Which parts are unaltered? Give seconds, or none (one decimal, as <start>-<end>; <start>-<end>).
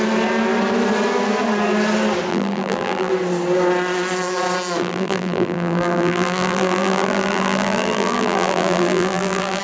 0.0-2.3; 3.1-4.8